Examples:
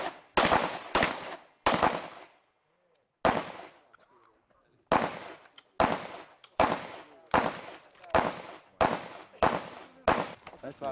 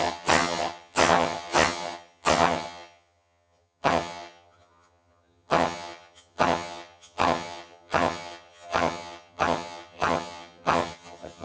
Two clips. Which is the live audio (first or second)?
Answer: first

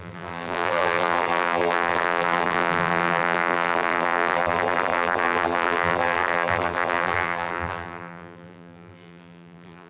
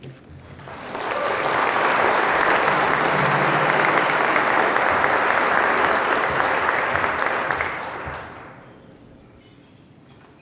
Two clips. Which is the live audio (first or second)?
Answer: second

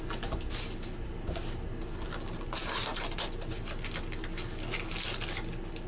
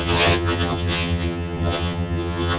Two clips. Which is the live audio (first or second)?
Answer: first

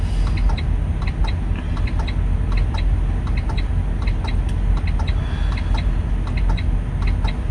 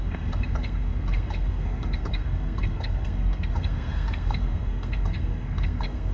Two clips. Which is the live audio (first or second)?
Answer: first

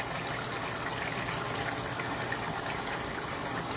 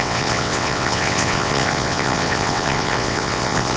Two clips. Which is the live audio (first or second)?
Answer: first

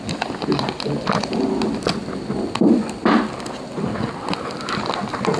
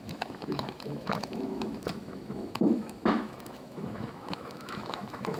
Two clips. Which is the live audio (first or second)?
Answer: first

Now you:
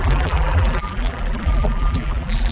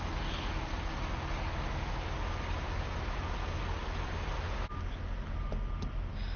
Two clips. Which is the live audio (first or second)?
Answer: second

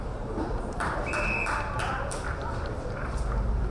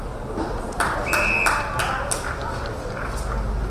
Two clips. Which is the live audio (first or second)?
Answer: second